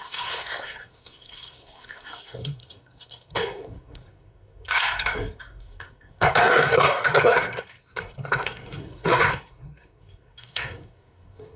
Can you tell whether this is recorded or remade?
remade